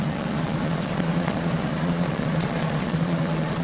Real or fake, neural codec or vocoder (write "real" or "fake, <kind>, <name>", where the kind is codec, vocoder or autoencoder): fake, vocoder, Vocos